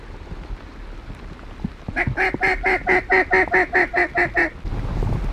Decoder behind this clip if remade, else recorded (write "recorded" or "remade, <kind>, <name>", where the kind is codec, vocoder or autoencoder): recorded